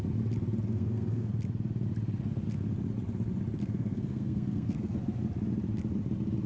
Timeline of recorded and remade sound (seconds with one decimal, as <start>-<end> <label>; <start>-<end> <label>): 0.0-0.7 recorded; 0.7-1.3 remade; 1.3-3.6 recorded; 3.6-5.0 remade; 5.0-6.5 recorded